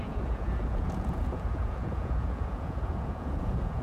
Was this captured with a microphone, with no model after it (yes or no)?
no